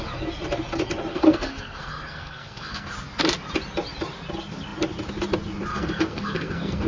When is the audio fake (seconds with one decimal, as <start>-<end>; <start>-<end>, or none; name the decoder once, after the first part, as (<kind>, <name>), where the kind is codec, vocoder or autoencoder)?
1.1-2.9 (codec, SNAC); 5.7-6.9